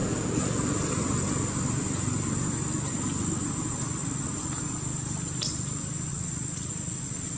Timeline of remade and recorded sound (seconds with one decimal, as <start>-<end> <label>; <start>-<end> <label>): 0.0-6.1 recorded; 6.1-6.7 remade; 6.7-7.4 recorded